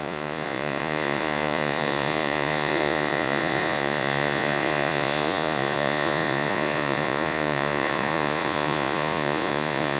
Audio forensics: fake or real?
fake